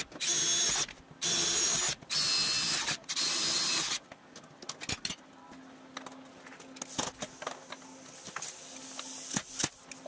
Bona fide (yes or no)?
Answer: yes